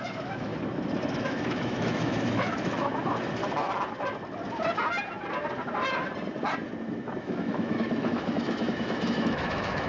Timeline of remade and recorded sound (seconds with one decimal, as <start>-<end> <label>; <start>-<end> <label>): 0.0-0.5 remade; 0.5-1.2 recorded; 1.2-3.4 remade; 3.4-7.2 recorded; 7.2-9.9 remade